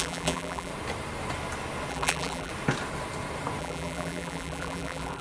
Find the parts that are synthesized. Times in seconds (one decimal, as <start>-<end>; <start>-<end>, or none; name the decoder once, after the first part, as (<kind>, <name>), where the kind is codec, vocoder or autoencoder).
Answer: 0.0-0.7 (vocoder, BigVGAN v2); 1.9-2.5; 3.6-5.2